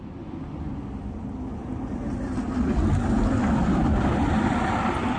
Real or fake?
real